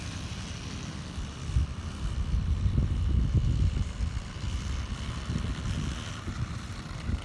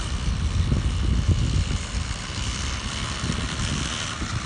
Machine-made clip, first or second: first